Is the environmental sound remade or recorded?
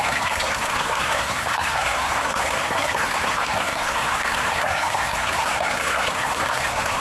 remade